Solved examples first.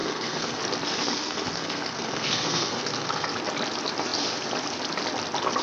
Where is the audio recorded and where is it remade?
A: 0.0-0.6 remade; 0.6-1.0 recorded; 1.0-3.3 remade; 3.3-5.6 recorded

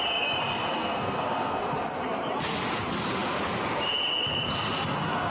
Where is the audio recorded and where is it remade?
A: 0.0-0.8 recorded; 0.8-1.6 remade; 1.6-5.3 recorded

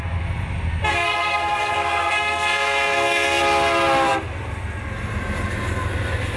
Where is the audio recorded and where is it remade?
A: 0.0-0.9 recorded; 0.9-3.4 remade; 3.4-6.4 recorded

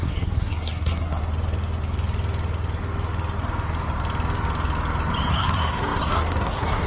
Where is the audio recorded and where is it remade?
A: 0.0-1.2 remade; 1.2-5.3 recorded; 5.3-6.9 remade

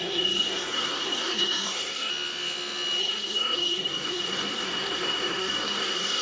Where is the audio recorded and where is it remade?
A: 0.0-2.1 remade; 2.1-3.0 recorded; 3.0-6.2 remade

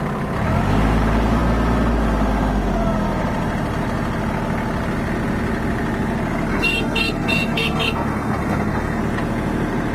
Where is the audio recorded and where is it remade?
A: 0.0-6.5 recorded; 6.5-9.0 remade; 9.0-9.9 recorded